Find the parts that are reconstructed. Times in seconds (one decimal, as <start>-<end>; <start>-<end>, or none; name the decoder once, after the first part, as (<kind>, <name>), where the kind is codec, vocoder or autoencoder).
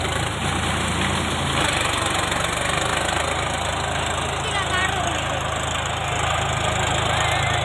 none